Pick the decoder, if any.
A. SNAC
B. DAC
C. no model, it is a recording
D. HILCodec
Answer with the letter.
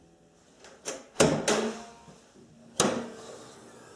C